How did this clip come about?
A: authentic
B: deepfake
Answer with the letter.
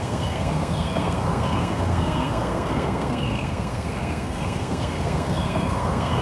B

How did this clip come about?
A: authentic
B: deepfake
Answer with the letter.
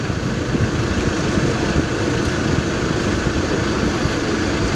A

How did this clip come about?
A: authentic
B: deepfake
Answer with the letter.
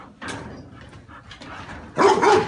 A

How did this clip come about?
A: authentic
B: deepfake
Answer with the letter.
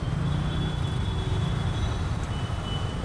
A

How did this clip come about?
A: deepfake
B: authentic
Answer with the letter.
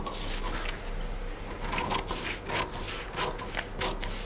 B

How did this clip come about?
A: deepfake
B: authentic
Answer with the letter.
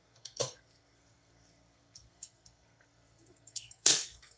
A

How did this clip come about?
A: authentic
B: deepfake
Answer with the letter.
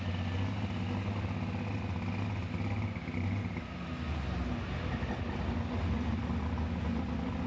A